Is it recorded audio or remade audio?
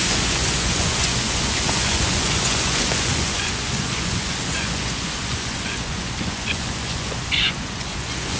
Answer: remade